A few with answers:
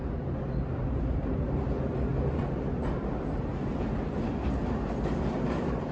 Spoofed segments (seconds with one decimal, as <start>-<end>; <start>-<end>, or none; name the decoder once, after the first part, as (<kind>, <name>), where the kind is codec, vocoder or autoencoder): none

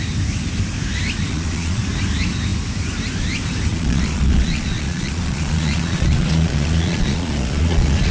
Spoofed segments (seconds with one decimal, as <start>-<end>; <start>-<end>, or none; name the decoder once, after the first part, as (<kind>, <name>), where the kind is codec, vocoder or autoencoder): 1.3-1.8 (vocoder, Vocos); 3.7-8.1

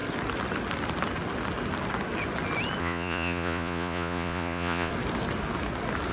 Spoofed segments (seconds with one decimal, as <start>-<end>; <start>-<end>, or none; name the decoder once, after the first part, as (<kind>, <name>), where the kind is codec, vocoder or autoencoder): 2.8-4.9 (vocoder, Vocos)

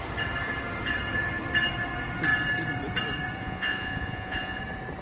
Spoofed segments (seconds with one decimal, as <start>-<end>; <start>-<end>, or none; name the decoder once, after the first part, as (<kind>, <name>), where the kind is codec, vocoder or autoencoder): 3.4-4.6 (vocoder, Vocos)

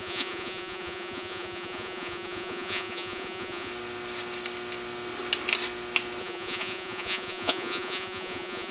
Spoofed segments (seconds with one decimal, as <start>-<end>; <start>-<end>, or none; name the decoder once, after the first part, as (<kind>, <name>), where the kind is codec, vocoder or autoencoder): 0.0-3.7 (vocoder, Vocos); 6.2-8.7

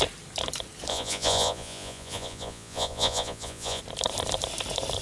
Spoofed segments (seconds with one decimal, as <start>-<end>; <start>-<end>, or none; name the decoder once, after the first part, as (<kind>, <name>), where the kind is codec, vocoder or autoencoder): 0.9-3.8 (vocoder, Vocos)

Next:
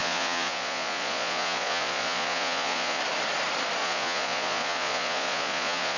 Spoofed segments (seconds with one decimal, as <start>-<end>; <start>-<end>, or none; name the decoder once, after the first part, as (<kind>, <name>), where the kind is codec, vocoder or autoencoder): 0.0-3.0 (vocoder, Vocos); 3.8-6.0

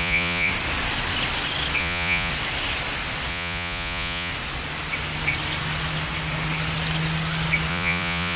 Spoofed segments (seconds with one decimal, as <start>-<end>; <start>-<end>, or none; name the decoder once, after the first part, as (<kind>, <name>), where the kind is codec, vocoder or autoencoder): 0.0-0.5 (vocoder, Vocos); 1.8-2.3; 3.3-4.3; 7.7-8.4